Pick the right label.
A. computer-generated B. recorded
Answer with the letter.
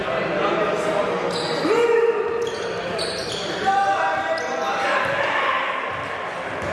B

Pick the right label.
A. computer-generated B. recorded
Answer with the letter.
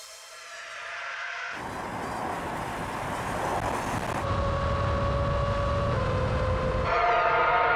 B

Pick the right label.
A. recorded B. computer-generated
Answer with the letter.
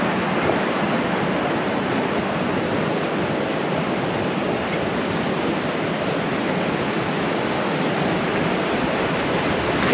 B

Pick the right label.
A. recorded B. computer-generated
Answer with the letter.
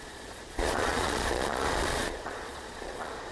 B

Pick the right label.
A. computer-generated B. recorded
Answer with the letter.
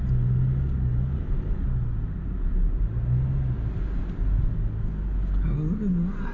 B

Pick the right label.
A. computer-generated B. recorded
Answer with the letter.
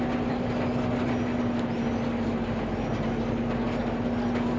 B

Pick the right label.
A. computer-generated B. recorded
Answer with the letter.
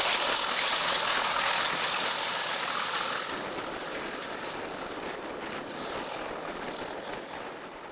B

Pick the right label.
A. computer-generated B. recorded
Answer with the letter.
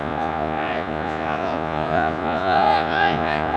A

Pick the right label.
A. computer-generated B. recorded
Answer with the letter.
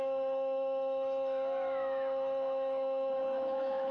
A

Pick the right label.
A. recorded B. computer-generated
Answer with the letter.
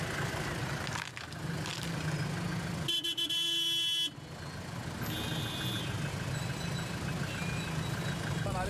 A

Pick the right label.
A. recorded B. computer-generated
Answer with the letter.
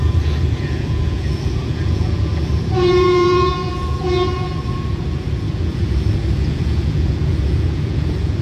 B